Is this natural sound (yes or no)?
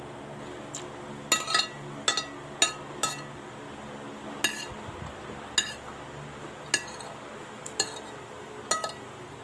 yes